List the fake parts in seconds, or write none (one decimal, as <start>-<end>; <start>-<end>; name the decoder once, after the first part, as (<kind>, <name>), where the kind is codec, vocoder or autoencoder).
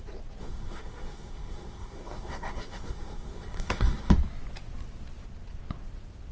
0.4-4.1 (codec, SNAC)